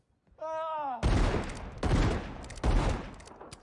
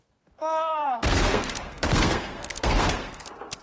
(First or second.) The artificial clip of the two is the second